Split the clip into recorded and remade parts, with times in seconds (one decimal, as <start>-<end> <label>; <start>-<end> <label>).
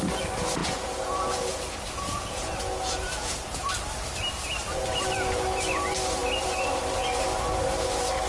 0.0-0.6 recorded; 0.6-3.7 remade; 3.7-8.3 recorded